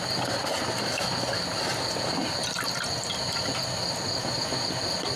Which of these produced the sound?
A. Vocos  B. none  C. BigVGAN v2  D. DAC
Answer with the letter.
B